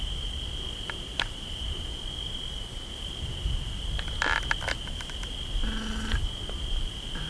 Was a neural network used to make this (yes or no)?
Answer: no